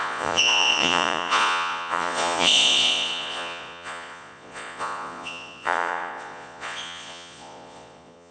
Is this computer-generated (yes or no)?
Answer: yes